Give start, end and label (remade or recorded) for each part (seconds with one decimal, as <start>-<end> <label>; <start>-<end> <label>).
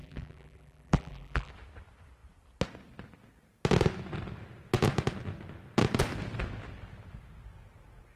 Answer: 0.0-1.5 remade; 1.5-8.2 recorded